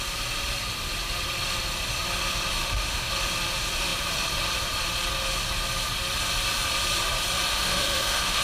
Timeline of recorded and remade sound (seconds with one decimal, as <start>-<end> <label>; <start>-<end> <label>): 0.0-2.6 recorded; 2.6-3.1 remade; 3.1-7.5 recorded; 7.5-8.4 remade